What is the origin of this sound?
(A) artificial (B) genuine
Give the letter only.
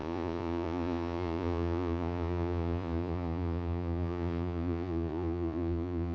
A